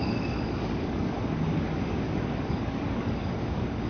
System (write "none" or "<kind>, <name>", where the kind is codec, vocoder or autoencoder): codec, DAC